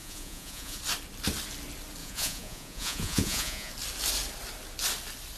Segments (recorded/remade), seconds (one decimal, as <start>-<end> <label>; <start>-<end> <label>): 0.0-0.8 remade; 0.8-2.0 recorded; 2.0-3.7 remade; 3.7-5.4 recorded

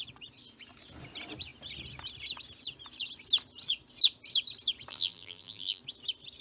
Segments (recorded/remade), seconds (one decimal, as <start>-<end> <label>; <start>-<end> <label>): 0.0-4.9 recorded; 4.9-5.8 remade; 5.8-6.4 recorded

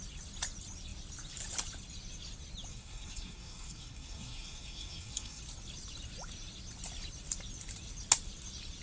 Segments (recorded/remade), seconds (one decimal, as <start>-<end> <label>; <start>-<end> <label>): 0.0-2.7 recorded; 2.7-5.4 remade; 5.4-8.8 recorded

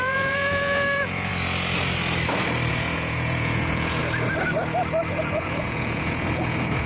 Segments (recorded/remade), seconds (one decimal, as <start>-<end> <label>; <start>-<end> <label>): 0.0-1.3 remade; 1.3-2.7 recorded; 2.7-4.0 remade; 4.0-5.1 recorded; 5.1-6.9 remade

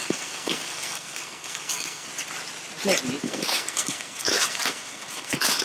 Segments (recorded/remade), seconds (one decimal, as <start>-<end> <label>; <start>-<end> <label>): 0.0-2.1 remade; 2.1-3.2 recorded; 3.2-5.6 remade

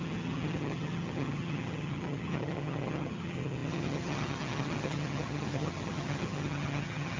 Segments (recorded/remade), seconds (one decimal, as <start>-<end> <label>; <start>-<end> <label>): 0.0-7.2 remade